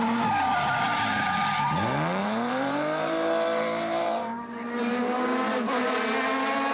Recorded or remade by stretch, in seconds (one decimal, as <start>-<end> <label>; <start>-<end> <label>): 0.0-2.2 recorded; 2.2-5.0 remade; 5.0-6.7 recorded